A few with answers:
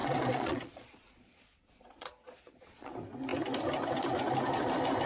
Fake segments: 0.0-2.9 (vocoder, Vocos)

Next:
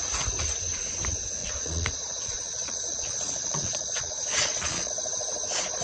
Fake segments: 1.4-4.9 (vocoder, Vocos)

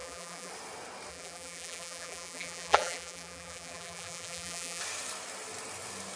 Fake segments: 0.0-0.5 (vocoder, BigVGAN v2); 1.1-4.8

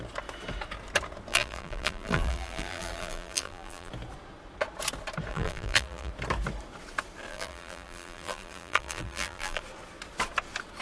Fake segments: 1.3-3.9 (vocoder, BigVGAN v2); 5.3-6.1; 7.3-9.6

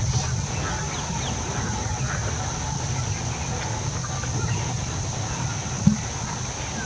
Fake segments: none

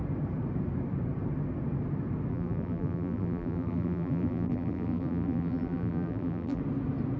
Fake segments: 2.3-6.6 (vocoder, BigVGAN v2)

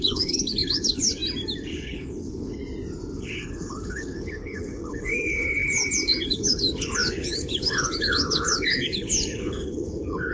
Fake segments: 0.0-1.2 (codec, HILCodec); 1.7-2.6; 3.2-10.3

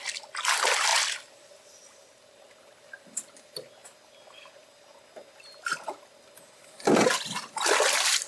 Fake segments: none